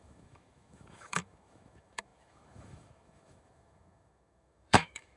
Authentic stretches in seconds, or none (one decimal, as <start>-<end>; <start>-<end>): none